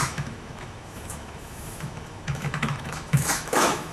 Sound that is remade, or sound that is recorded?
remade